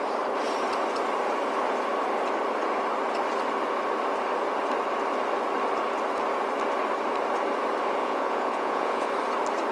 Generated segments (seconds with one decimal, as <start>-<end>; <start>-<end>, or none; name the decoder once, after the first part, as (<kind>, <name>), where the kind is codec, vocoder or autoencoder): 8.0-9.1 (vocoder, Vocos)